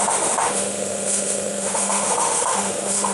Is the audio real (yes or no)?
no